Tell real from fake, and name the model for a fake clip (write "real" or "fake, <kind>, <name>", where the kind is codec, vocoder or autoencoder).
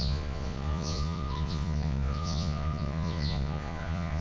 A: fake, vocoder, Vocos